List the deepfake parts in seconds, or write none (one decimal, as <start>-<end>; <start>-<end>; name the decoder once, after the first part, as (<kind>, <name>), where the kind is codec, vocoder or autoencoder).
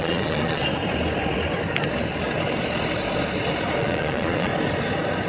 0.0-0.6 (vocoder, Vocos); 3.8-4.5